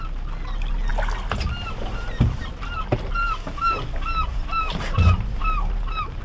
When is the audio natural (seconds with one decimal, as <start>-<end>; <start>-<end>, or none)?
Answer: 0.0-4.3